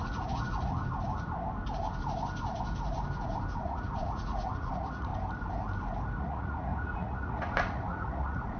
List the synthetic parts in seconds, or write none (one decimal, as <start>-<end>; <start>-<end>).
0.0-0.8; 3.6-5.1; 6.2-8.6